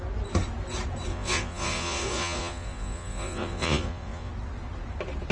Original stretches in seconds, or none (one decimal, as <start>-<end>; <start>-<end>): 0.0-1.1; 4.3-5.3